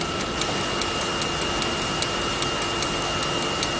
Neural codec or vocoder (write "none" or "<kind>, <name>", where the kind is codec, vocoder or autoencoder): none